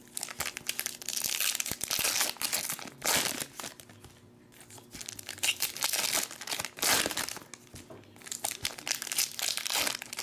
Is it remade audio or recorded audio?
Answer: recorded